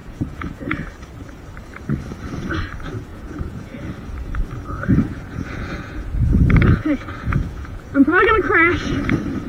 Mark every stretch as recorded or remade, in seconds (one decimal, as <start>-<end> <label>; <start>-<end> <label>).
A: 0.0-0.9 remade; 0.9-3.1 recorded; 3.1-3.8 remade; 3.8-4.9 recorded; 4.9-9.0 remade; 9.0-9.5 recorded